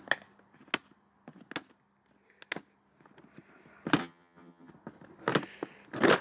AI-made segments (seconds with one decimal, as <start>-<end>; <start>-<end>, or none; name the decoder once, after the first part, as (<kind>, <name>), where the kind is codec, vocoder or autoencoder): 4.0-4.7 (vocoder, HiFi-GAN)